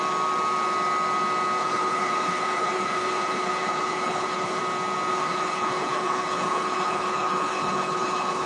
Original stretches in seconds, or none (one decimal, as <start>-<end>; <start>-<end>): 0.0-1.6; 4.6-5.1